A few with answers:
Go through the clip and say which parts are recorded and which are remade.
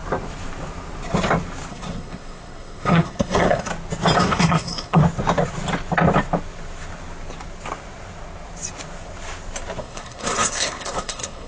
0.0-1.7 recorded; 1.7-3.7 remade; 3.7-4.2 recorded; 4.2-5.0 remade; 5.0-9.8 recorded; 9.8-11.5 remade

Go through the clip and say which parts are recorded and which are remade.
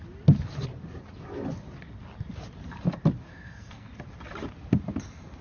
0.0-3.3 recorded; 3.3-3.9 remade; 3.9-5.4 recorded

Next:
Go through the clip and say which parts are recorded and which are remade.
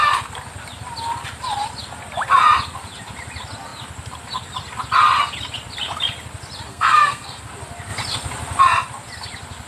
0.0-6.7 recorded; 6.7-7.4 remade; 7.4-9.7 recorded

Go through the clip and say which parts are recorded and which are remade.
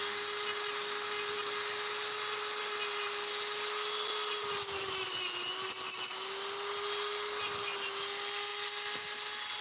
0.0-9.6 recorded